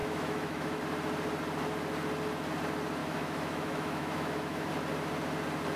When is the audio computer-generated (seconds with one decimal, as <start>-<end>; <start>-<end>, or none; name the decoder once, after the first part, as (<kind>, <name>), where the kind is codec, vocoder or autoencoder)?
0.0-0.8 (autoencoder, DAC-VAE); 3.0-4.7